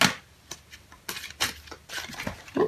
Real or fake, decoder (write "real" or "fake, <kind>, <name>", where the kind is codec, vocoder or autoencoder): real